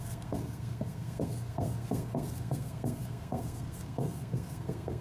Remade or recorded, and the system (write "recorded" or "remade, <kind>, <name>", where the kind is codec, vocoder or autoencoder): remade, codec, SNAC